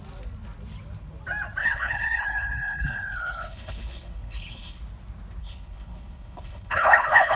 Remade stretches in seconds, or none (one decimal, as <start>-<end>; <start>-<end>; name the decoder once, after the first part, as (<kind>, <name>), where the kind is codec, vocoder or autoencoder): 1.6-4.8 (codec, HILCodec); 5.4-7.4